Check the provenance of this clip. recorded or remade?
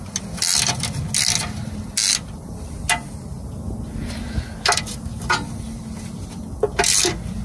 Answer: recorded